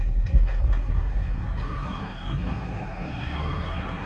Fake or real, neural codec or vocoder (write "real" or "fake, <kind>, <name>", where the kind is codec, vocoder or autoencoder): fake, codec, SNAC